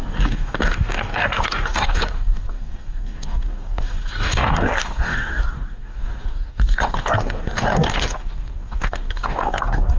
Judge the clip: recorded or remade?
remade